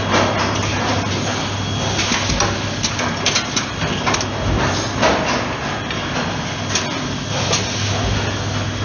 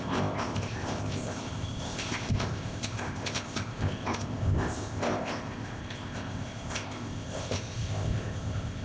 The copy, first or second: second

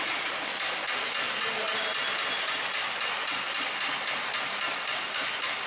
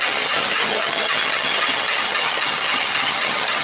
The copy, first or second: second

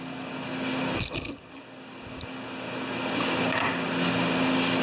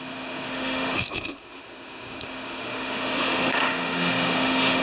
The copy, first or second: second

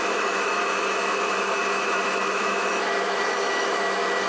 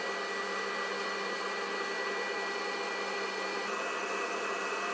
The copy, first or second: first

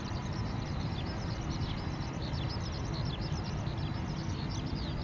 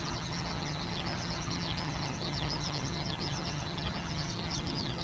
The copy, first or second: second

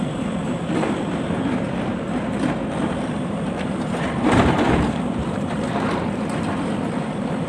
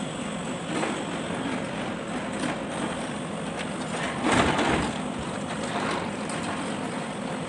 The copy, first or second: first